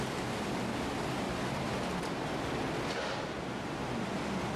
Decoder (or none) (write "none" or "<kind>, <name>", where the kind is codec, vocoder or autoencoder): none